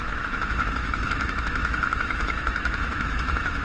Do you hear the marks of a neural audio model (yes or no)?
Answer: yes